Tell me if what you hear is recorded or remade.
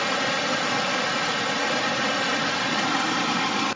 recorded